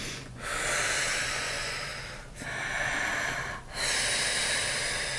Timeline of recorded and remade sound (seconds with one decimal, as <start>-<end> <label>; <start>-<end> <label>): 0.0-0.5 remade; 0.5-1.2 recorded; 1.2-1.9 remade; 1.9-5.2 recorded